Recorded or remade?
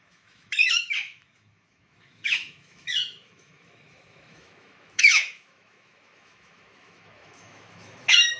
remade